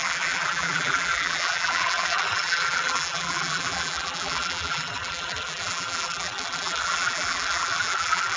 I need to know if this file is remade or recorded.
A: remade